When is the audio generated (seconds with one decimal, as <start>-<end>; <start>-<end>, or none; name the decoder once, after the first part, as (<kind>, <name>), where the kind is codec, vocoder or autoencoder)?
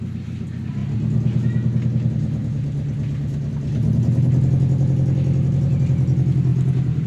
6.5-7.1 (vocoder, BigVGAN v2)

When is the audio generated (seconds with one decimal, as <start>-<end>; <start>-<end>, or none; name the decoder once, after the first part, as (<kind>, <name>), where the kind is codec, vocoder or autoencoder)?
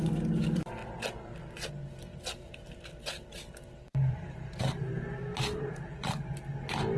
2.1-6.3 (vocoder, BigVGAN v2)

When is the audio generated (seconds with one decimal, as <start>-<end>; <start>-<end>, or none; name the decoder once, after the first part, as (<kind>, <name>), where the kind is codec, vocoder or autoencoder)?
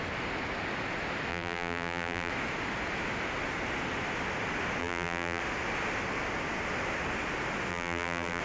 1.3-2.3 (vocoder, BigVGAN v2); 4.8-5.4; 7.7-8.4